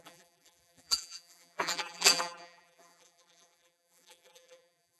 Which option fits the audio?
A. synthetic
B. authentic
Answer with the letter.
A